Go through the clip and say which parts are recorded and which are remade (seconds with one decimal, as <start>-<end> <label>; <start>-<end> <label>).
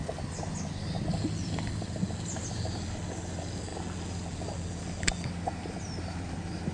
0.0-6.7 recorded